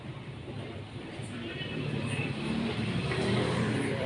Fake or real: fake